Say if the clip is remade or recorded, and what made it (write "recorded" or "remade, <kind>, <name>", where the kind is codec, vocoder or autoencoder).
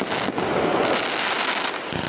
recorded